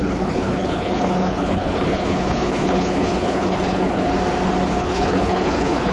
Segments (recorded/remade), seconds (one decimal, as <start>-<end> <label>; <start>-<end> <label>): 0.0-4.1 remade; 4.1-4.7 recorded; 4.7-5.9 remade